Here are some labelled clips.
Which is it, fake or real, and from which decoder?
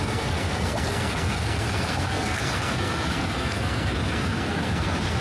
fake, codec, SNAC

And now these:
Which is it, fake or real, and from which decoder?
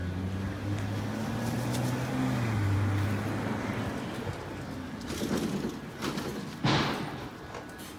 real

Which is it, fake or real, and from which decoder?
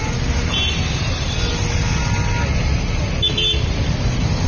real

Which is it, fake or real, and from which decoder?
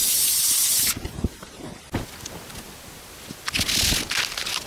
real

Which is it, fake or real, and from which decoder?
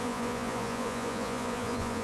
fake, vocoder, Vocos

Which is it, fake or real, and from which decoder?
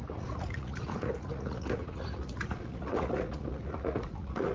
fake, vocoder, Vocos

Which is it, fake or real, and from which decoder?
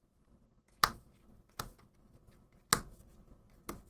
real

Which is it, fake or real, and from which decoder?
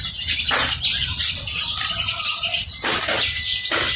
real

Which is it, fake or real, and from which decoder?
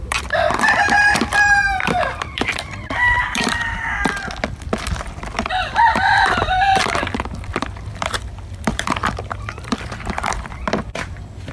fake, vocoder, BigVGAN v2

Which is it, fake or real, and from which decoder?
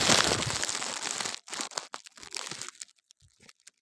real